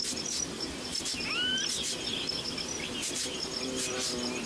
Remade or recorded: recorded